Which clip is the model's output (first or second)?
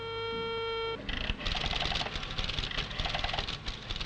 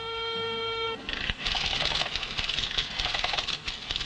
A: second